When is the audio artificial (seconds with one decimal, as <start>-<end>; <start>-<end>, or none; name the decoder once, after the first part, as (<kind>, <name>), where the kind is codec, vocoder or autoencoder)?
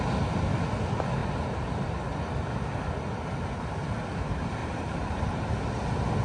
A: 1.2-2.6 (vocoder, BigVGAN v2); 4.6-5.5